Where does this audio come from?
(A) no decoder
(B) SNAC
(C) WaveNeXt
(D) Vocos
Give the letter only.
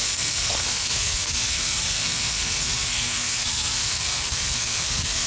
B